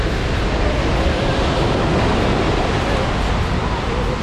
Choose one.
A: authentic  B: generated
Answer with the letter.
A